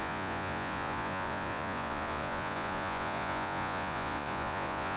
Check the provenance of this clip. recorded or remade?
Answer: remade